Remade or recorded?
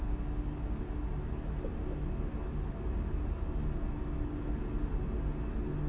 recorded